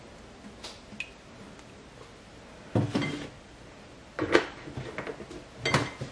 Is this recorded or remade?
recorded